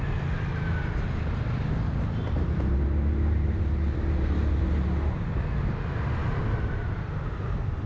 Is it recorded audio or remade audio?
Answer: recorded